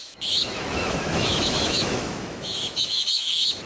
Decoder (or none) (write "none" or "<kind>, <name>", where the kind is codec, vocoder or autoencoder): autoencoder, DAC-VAE